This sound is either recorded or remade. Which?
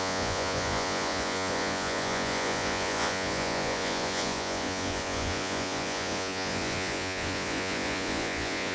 remade